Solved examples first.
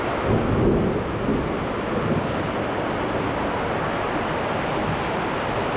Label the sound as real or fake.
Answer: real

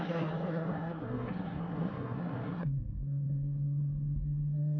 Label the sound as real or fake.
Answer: fake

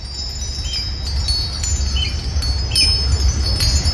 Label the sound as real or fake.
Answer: real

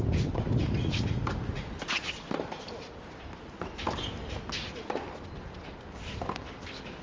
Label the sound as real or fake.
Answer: real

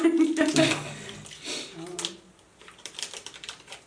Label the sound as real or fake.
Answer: real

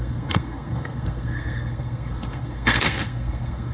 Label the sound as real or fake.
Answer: fake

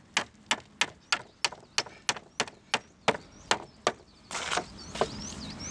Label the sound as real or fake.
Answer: real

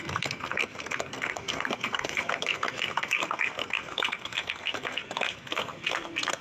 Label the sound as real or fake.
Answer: fake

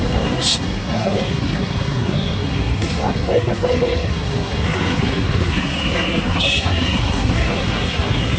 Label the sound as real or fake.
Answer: fake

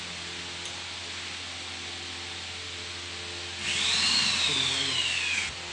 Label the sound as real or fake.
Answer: real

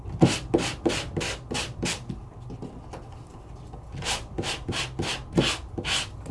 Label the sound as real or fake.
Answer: real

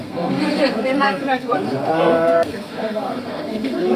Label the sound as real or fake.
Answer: fake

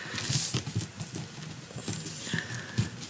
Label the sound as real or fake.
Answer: real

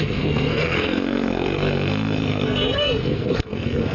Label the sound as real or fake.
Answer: fake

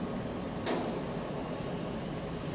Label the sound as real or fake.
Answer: real